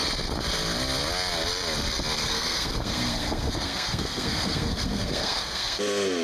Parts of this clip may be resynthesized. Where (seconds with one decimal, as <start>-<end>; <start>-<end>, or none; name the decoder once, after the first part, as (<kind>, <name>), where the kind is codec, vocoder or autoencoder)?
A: 2.2-5.8 (codec, SNAC)